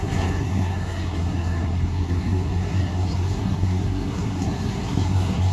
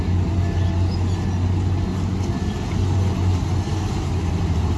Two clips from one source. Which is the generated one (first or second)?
first